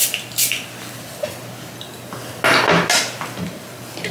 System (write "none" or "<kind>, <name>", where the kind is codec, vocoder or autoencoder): none